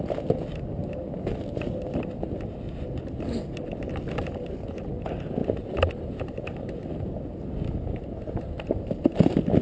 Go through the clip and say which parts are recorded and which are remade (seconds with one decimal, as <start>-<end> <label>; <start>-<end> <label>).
0.0-5.4 recorded; 5.4-7.1 remade; 7.1-9.6 recorded